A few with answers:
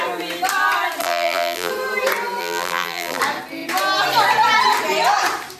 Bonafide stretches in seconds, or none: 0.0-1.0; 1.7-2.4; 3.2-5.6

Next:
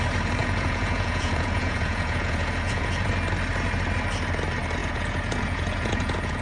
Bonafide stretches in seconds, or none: 0.0-0.4; 3.1-4.8